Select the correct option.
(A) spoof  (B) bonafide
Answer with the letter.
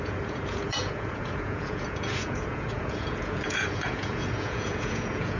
A